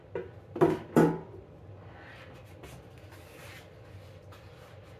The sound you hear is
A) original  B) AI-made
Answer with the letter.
A